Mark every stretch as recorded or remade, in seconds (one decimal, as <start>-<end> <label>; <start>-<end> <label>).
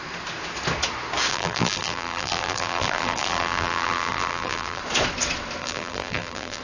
0.0-1.3 recorded; 1.3-4.8 remade; 4.8-5.6 recorded; 5.6-6.6 remade